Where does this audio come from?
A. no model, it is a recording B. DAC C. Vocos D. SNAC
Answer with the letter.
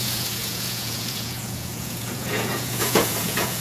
C